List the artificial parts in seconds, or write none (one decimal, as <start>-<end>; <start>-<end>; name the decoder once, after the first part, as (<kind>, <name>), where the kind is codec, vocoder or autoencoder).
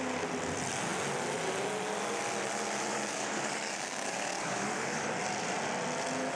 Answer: 2.9-5.1 (codec, DAC)